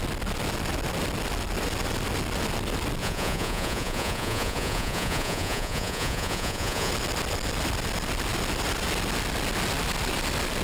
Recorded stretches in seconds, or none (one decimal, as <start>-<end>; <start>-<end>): 0.0-3.0; 6.9-10.6